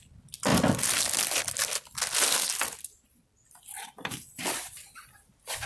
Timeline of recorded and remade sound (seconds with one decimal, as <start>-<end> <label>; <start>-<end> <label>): 0.0-5.7 recorded